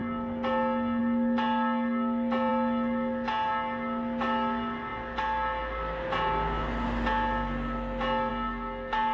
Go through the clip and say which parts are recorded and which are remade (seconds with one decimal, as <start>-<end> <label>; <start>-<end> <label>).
0.0-9.1 recorded